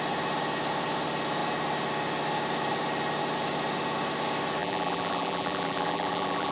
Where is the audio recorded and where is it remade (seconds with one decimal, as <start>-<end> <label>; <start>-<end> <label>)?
0.0-4.6 recorded; 4.6-6.5 remade